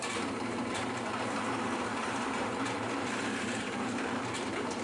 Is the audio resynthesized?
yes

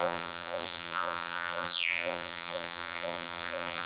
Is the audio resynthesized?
yes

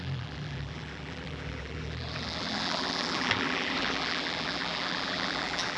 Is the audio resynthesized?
yes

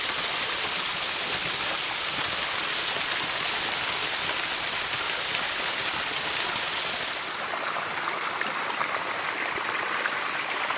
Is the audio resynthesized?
yes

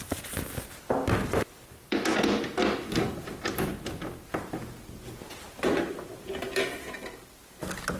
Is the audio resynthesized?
no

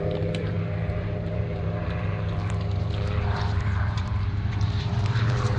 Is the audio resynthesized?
yes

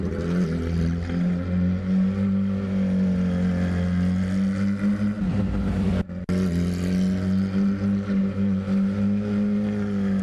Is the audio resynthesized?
no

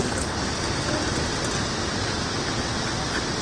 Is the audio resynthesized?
no